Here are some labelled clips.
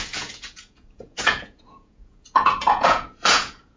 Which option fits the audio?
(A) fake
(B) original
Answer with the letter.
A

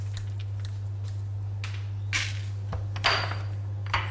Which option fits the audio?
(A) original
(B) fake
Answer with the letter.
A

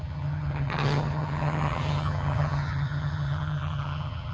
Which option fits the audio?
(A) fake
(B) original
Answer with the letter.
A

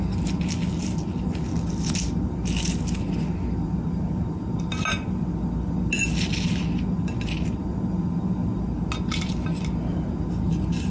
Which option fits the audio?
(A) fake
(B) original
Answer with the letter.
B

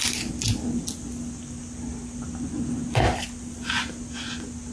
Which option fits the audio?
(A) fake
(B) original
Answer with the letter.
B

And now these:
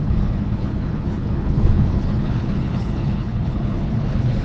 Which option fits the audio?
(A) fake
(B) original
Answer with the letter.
A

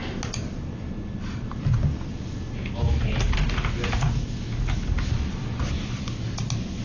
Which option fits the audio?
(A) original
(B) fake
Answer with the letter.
A